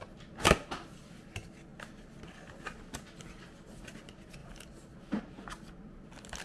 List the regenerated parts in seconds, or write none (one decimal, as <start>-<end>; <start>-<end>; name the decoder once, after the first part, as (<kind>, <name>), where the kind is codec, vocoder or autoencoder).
none